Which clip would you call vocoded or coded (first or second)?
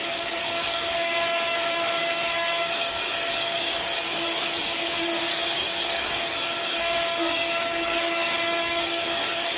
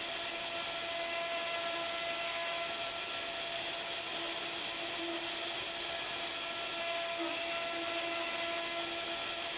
first